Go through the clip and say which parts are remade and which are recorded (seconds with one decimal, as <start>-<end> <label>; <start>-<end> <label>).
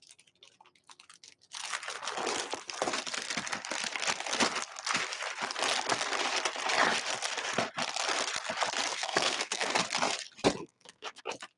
0.0-8.9 recorded; 8.9-9.7 remade; 9.7-10.6 recorded; 10.6-11.2 remade; 11.2-11.6 recorded